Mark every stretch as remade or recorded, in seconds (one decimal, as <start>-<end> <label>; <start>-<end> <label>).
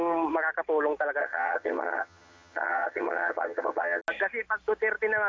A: 0.0-1.2 recorded; 1.2-4.0 remade; 4.0-5.3 recorded